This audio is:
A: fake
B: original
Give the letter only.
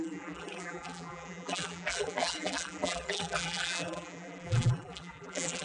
A